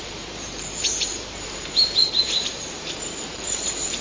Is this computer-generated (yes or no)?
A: yes